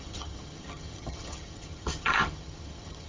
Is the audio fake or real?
fake